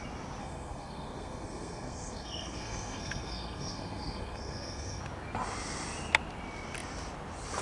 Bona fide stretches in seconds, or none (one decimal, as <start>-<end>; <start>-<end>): 0.0-0.4; 5.0-7.6